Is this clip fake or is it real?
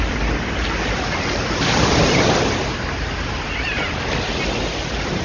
real